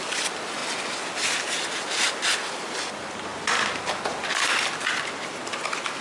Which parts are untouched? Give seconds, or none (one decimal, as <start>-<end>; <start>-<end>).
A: 0.0-6.0